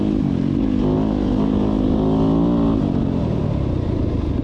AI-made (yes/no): no